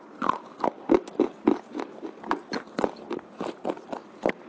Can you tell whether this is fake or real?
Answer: real